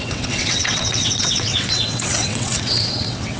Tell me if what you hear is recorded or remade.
remade